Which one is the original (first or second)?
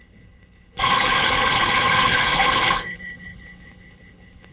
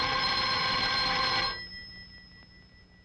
second